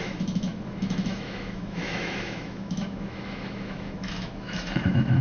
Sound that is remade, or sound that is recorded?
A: remade